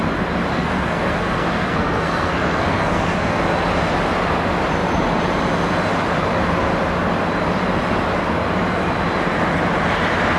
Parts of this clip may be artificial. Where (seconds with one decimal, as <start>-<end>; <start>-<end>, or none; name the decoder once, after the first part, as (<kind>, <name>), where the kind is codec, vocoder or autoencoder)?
0.5-3.4 (codec, SNAC)